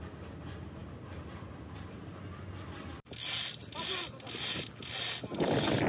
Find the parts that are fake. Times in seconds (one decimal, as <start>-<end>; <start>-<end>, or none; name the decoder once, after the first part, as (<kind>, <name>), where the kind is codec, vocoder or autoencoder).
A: none